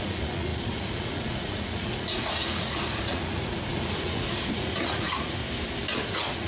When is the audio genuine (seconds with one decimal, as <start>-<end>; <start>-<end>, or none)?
5.4-6.1